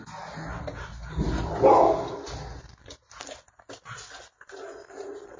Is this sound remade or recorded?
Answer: recorded